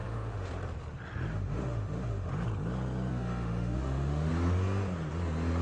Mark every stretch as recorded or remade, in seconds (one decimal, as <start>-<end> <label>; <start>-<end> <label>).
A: 0.0-0.5 remade; 0.5-1.3 recorded; 1.3-2.3 remade; 2.3-3.1 recorded; 3.1-4.3 remade; 4.3-5.6 recorded